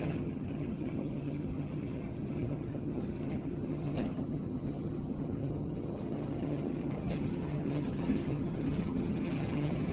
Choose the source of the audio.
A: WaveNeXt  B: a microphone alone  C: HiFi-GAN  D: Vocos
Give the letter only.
C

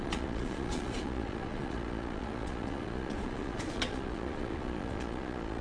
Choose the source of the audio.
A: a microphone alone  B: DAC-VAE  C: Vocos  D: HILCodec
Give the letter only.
C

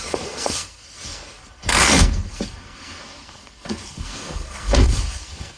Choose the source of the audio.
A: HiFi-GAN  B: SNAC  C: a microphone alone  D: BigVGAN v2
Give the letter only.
B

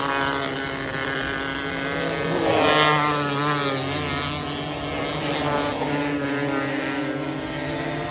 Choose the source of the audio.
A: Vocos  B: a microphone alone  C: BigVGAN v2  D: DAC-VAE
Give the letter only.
B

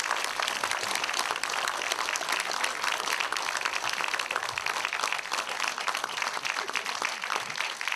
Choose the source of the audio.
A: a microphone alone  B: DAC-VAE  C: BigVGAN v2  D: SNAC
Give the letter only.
A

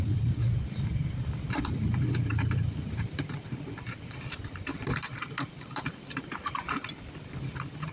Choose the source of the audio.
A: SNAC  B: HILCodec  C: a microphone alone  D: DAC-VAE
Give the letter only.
C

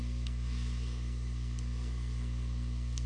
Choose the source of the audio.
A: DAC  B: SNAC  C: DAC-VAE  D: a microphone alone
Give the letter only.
B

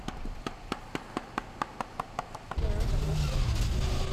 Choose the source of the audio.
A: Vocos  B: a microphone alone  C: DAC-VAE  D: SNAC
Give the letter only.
B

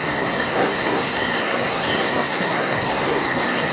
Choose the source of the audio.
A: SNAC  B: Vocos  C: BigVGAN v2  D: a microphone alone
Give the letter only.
A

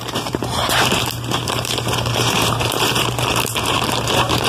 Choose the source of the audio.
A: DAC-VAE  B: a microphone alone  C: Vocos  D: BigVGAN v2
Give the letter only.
D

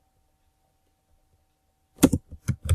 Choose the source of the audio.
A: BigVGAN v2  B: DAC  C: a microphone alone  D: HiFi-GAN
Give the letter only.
C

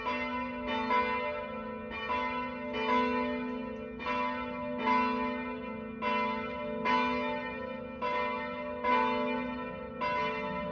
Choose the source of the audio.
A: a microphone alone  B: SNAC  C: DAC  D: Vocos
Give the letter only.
A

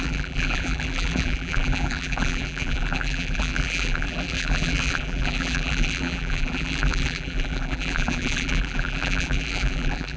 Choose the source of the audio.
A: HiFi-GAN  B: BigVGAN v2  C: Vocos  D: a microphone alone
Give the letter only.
B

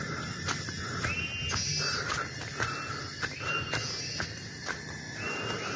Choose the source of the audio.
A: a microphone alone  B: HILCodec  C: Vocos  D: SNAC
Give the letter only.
A